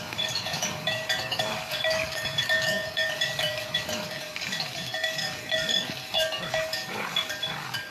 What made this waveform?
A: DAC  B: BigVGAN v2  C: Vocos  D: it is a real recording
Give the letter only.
A